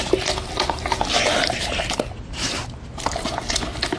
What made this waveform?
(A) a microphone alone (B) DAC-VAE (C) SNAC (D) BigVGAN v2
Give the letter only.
A